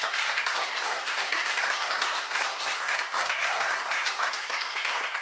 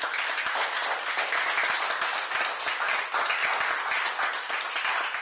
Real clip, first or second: second